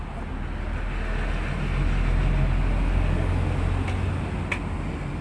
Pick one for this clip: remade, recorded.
recorded